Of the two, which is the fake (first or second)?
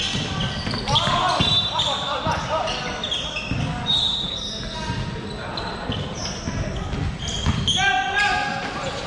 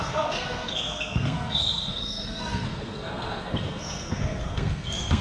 second